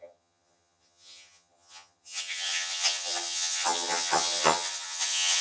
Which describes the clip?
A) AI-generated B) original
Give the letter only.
A